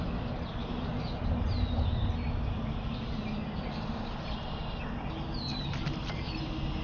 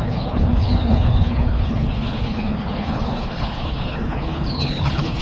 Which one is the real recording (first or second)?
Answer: first